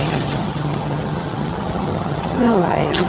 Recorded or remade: remade